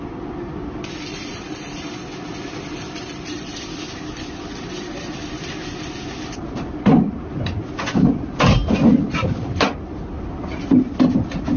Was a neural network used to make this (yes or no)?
no